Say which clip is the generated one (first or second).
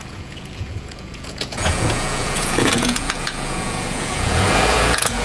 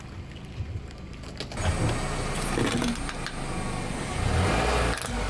first